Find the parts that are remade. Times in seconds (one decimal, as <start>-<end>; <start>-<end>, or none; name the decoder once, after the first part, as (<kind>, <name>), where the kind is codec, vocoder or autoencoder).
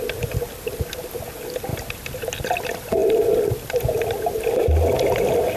0.5-1.0 (vocoder, BigVGAN v2)